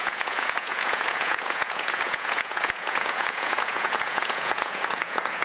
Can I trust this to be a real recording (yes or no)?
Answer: no